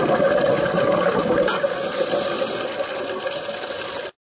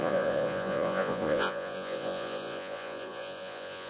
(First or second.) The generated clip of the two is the second